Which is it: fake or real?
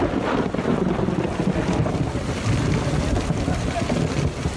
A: real